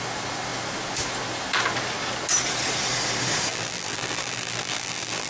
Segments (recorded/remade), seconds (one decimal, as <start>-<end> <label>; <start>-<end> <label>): 0.0-3.5 recorded; 3.5-5.3 remade